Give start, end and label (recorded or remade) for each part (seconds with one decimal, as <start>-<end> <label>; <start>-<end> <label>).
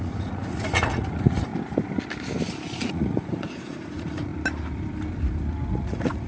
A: 0.0-1.5 remade; 1.5-2.9 recorded; 2.9-4.3 remade; 4.3-5.7 recorded; 5.7-6.3 remade